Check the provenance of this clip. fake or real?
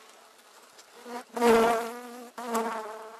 real